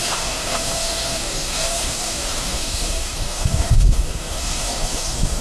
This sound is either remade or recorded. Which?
remade